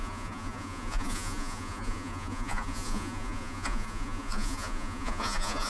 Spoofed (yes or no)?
yes